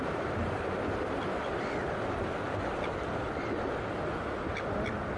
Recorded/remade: recorded